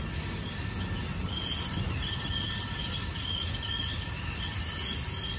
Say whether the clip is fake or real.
real